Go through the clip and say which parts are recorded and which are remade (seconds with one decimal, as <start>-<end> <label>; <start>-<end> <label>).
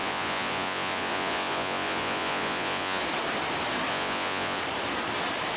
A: 0.0-3.0 remade; 3.0-3.9 recorded; 3.9-4.6 remade; 4.6-5.6 recorded